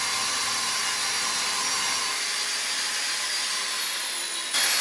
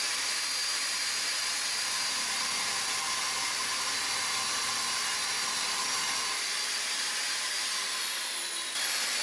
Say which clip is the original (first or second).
first